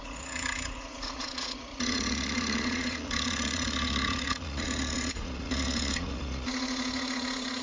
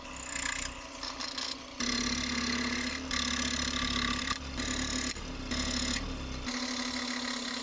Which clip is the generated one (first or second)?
first